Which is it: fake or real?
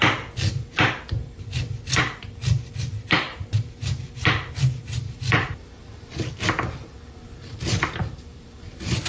fake